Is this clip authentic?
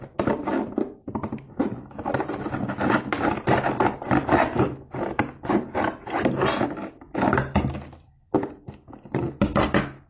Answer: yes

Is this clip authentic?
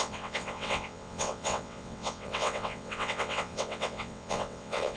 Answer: no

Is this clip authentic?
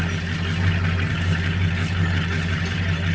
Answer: yes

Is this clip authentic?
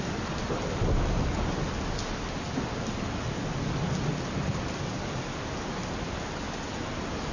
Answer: yes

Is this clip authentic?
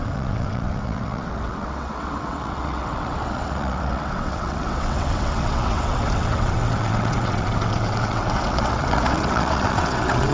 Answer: no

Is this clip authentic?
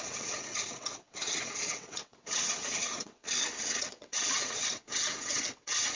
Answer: no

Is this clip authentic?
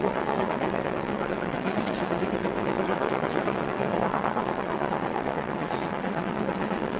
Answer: no